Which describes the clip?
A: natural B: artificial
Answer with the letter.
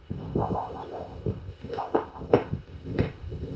B